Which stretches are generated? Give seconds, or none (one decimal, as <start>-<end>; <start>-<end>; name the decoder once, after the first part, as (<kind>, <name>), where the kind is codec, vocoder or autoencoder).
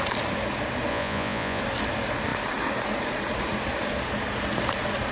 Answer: 0.9-1.6 (vocoder, Vocos)